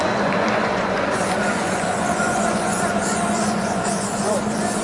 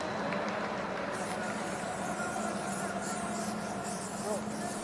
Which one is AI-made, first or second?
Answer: first